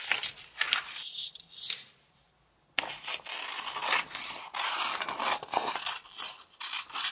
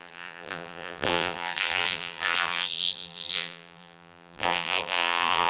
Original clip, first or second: first